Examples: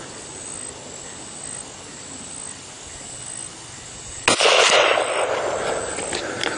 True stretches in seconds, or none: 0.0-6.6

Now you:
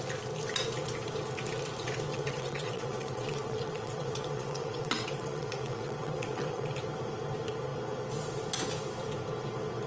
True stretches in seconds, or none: 0.0-2.1; 6.7-9.9

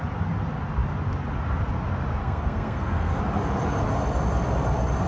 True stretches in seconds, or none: 0.0-2.2; 3.2-5.1

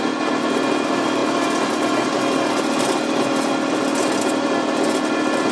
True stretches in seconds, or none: 0.0-5.5

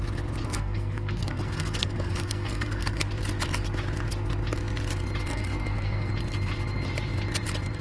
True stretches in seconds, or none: 0.0-0.4; 3.0-5.3; 6.1-7.8

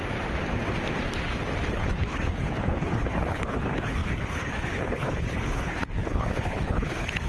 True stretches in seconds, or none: 0.0-1.7